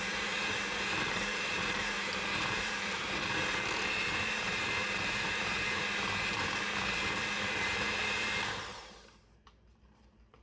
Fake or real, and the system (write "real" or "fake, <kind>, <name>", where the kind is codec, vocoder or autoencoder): fake, vocoder, BigVGAN v2